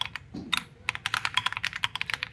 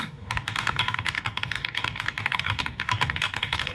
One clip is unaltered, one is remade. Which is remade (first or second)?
second